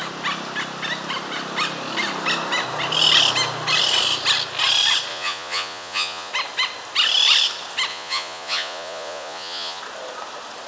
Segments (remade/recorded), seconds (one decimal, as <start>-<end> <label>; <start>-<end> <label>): 0.0-5.1 recorded; 5.1-6.3 remade; 6.3-7.9 recorded; 7.9-9.8 remade; 9.8-10.7 recorded